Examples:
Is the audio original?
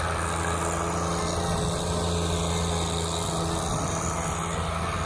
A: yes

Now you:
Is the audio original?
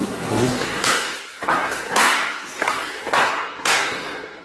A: no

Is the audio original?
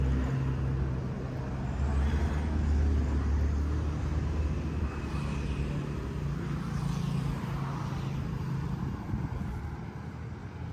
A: yes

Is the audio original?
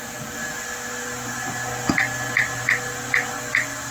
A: yes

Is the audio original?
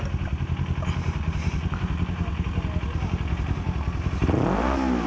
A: yes